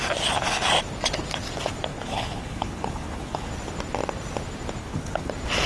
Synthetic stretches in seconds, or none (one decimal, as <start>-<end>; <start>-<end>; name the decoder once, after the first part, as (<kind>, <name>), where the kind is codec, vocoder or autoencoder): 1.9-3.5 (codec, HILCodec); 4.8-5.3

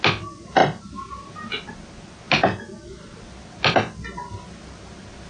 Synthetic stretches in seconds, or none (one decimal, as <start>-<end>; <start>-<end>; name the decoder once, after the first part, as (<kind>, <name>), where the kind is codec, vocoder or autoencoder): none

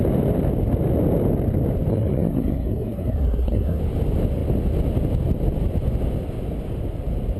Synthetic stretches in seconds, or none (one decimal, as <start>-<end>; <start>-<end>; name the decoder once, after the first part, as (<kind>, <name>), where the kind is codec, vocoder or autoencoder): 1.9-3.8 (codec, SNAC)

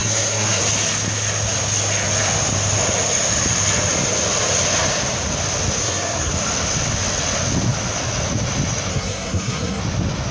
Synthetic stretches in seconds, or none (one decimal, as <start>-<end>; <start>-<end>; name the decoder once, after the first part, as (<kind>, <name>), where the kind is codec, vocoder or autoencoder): 0.0-0.6 (codec, SNAC); 5.8-6.3; 8.9-9.8

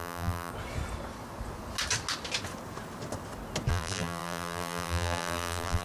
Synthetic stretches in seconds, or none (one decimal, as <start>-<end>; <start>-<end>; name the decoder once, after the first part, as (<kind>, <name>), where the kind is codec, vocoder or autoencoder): 0.0-0.5 (vocoder, BigVGAN v2); 3.7-5.8